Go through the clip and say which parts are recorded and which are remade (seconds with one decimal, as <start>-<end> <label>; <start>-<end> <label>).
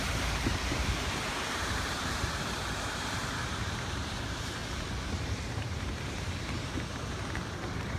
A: 0.0-4.6 remade; 4.6-5.5 recorded; 5.5-8.0 remade